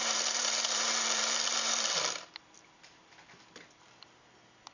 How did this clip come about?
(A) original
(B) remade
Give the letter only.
B